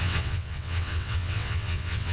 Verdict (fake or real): fake